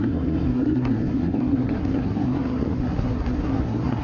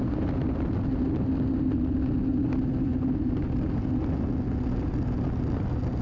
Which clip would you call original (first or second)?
second